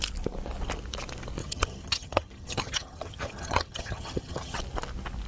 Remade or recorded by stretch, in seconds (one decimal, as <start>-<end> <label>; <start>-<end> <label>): 0.0-1.4 recorded; 1.4-4.6 remade; 4.6-5.3 recorded